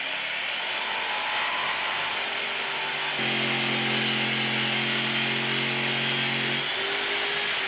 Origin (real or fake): real